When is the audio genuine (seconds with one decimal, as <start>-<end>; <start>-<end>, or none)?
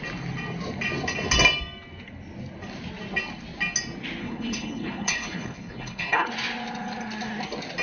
0.0-4.2; 6.3-7.8